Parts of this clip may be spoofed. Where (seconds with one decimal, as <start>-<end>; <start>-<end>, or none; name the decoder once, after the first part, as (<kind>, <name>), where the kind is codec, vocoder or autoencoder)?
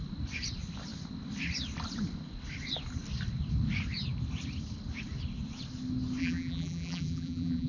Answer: 6.2-7.7 (vocoder, BigVGAN v2)